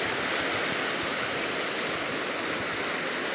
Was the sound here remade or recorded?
recorded